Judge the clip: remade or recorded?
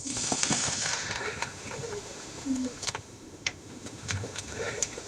remade